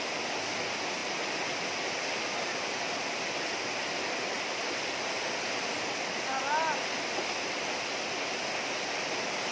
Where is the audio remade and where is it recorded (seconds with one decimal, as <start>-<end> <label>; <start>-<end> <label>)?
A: 0.0-9.5 recorded